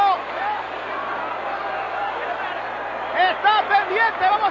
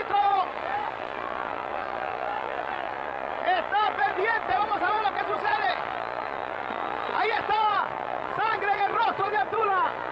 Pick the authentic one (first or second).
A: first